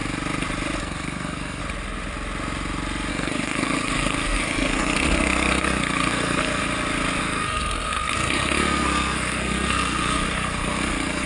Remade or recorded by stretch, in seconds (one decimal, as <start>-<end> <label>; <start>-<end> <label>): 0.0-0.8 recorded; 0.8-1.6 remade; 1.6-3.1 recorded; 3.1-6.6 remade; 6.6-7.2 recorded; 7.2-11.3 remade